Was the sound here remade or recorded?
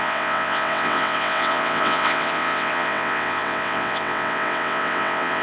remade